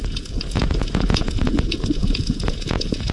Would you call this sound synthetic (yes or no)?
yes